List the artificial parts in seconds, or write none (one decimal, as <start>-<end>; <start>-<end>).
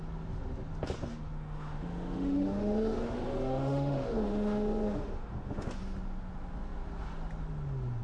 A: 1.0-5.8